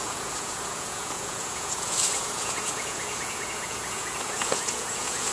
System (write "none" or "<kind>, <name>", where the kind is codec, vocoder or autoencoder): vocoder, Vocos